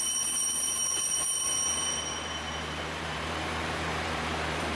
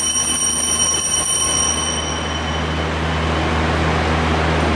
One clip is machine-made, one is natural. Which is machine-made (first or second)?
first